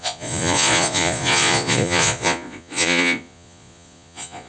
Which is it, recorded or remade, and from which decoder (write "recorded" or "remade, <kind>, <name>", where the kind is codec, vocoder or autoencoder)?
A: remade, vocoder, Vocos